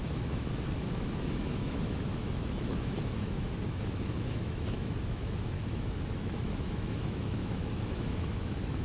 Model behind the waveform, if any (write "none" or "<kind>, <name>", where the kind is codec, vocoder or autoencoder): autoencoder, DAC-VAE